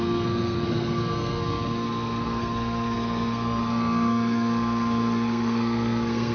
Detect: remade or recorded remade